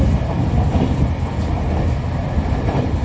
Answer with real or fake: real